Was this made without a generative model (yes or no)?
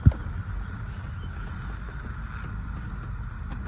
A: yes